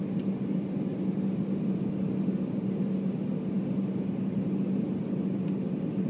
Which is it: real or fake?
real